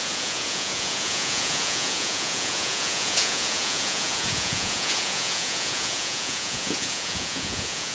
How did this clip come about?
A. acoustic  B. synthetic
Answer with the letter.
B